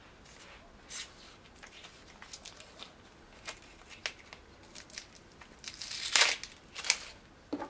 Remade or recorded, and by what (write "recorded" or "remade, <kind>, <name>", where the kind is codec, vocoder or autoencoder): recorded